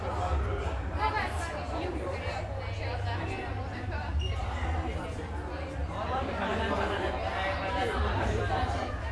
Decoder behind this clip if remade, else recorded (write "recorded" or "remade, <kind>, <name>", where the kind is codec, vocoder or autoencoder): recorded